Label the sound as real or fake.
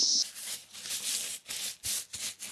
real